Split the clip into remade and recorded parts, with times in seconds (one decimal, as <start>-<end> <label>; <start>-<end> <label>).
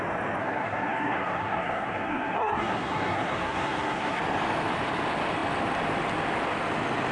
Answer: 0.0-0.4 recorded; 0.4-4.2 remade; 4.2-7.1 recorded